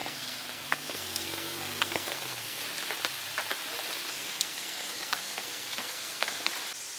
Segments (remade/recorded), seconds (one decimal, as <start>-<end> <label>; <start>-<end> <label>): 0.0-2.6 remade; 2.6-4.1 recorded; 4.1-6.5 remade; 6.5-7.0 recorded

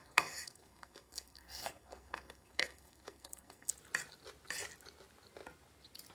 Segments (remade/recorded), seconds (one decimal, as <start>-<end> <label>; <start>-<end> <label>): 0.0-3.7 remade; 3.7-6.1 recorded

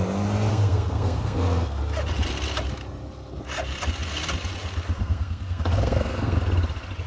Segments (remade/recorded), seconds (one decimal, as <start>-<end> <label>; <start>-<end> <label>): 0.0-0.5 recorded; 0.5-1.8 remade; 1.8-5.0 recorded; 5.0-6.4 remade; 6.4-7.1 recorded

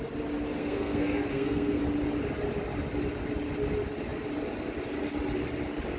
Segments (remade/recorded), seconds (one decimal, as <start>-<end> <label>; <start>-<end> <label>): 0.0-0.5 recorded; 0.5-1.8 remade; 1.8-6.0 recorded

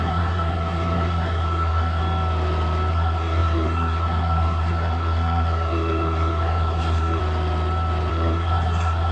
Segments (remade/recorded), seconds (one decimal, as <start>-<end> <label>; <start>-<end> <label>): 0.0-2.0 remade; 2.0-2.9 recorded; 2.9-7.2 remade; 7.2-8.1 recorded; 8.1-9.1 remade

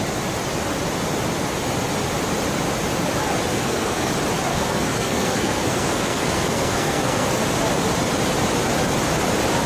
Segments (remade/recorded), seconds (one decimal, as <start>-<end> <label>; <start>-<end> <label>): 0.0-3.5 recorded; 3.5-4.1 remade; 4.1-4.5 recorded; 4.5-7.4 remade; 7.4-9.7 recorded